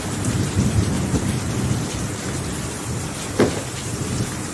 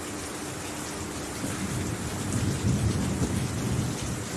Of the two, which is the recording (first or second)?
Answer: second